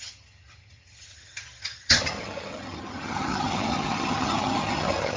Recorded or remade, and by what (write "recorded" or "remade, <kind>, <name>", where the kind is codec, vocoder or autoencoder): remade, vocoder, HiFi-GAN